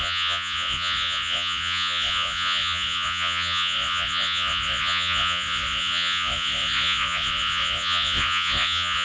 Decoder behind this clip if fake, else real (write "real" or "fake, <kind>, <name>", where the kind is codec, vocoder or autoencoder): fake, vocoder, Vocos